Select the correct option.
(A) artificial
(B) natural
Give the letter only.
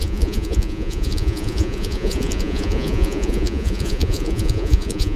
A